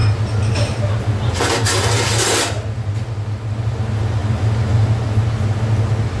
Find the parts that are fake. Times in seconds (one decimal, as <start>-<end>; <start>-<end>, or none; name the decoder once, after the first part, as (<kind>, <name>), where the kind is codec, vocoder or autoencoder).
none